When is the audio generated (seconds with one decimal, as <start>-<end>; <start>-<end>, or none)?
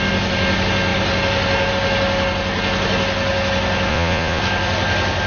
3.9-4.4